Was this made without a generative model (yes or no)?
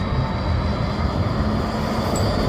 yes